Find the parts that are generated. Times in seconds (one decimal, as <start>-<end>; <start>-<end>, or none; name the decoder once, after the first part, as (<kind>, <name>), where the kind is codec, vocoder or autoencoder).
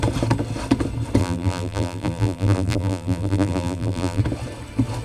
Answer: 1.2-4.2 (vocoder, BigVGAN v2)